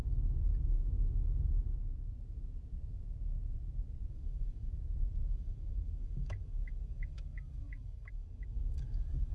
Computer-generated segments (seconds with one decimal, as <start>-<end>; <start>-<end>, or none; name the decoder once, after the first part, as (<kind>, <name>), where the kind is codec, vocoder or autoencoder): 4.1-4.7 (codec, DAC); 5.3-9.3